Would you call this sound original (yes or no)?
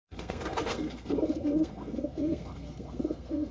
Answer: no